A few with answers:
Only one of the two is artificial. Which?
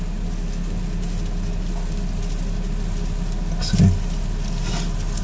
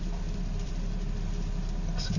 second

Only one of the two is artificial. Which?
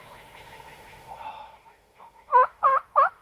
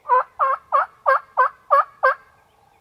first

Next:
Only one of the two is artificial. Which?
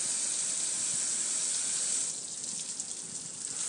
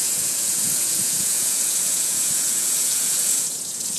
second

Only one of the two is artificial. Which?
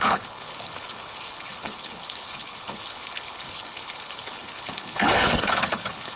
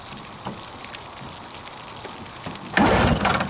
first